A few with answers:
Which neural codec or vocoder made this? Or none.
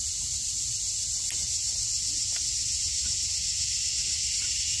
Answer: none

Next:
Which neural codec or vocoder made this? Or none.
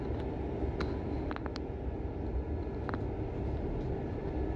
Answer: none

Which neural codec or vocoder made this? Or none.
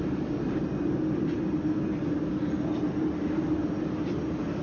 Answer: none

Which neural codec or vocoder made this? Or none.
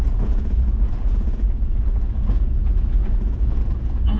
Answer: vocoder, Vocos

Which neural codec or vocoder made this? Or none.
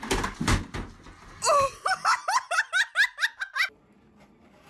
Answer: none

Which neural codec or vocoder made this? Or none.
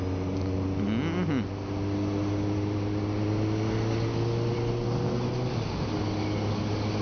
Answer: none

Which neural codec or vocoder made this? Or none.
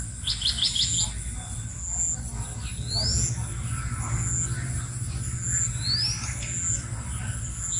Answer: none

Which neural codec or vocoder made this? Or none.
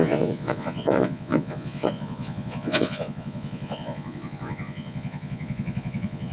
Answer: vocoder, Vocos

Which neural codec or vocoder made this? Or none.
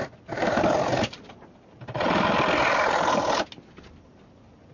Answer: none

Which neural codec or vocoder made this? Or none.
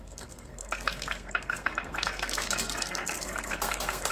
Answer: codec, SNAC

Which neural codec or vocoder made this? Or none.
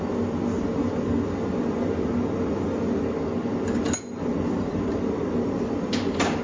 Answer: none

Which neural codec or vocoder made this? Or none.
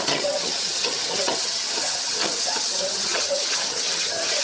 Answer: vocoder, HiFi-GAN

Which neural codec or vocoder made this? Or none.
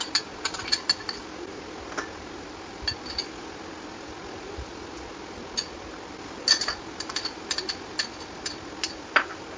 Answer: none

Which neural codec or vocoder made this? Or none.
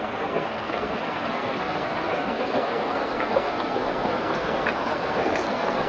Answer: codec, SNAC